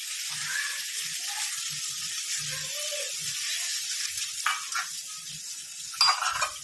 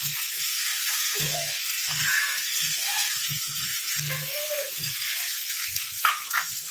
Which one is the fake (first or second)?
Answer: second